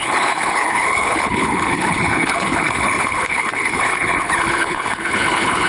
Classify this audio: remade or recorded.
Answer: remade